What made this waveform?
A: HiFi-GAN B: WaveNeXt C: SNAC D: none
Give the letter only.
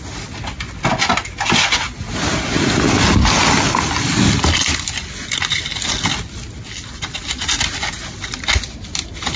D